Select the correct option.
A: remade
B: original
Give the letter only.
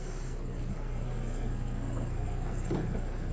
A